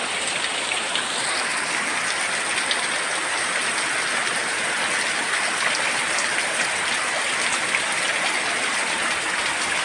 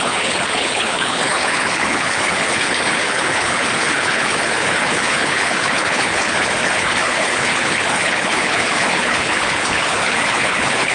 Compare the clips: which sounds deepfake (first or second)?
second